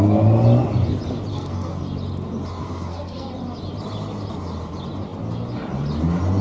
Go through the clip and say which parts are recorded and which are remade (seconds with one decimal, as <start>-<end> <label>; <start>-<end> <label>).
0.0-1.3 recorded; 1.3-1.8 remade; 1.8-2.6 recorded; 2.6-3.3 remade; 3.3-6.4 recorded